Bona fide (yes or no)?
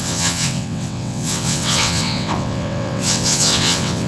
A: no